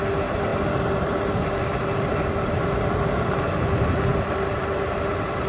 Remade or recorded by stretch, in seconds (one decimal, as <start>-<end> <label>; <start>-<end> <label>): 0.0-4.1 recorded; 4.1-5.5 remade